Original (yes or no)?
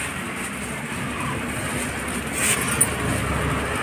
yes